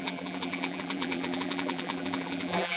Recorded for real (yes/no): no